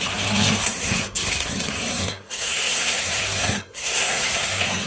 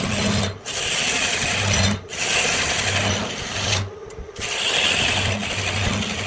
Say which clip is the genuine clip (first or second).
second